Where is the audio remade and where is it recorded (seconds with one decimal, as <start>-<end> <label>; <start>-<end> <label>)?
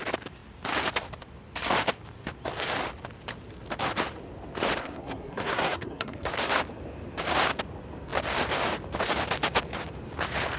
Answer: 0.0-4.8 recorded; 4.8-6.3 remade; 6.3-10.6 recorded